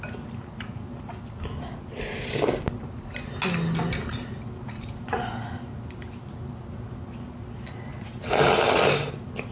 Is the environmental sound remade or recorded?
recorded